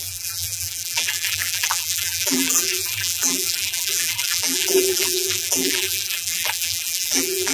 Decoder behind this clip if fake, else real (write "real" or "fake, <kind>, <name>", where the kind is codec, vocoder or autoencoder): fake, vocoder, BigVGAN v2